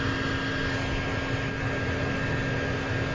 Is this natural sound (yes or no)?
yes